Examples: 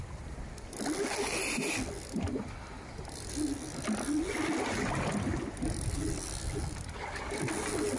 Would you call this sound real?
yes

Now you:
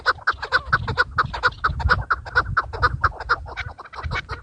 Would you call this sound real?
yes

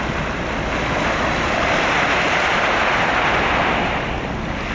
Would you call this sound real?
yes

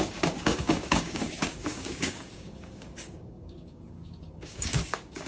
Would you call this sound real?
no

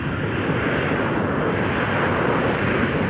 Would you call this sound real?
yes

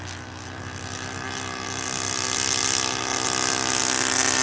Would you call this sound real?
yes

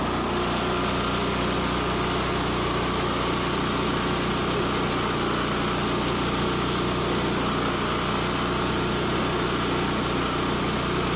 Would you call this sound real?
yes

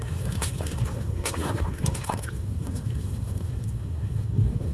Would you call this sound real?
no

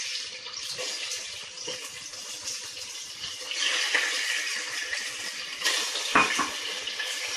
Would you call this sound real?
yes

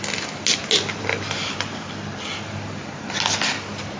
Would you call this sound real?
yes